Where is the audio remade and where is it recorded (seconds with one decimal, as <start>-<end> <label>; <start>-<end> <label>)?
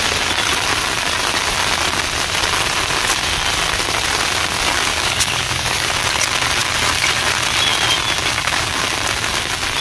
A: 0.0-4.9 recorded; 4.9-5.9 remade; 5.9-8.3 recorded; 8.3-8.8 remade; 8.8-9.8 recorded